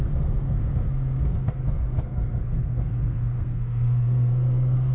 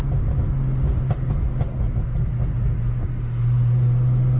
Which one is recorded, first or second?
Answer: second